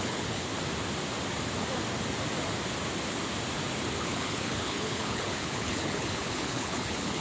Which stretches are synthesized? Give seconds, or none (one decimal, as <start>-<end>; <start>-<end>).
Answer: 0.0-0.5; 4.0-7.2